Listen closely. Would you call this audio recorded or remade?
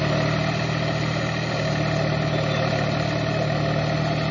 recorded